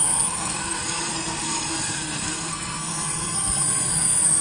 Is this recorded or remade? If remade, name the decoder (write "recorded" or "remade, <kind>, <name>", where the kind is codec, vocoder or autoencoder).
remade, codec, SNAC